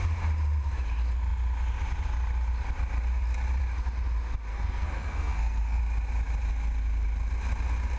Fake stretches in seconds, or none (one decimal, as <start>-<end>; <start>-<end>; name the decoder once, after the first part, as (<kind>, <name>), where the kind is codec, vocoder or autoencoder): 4.5-5.8 (codec, SNAC)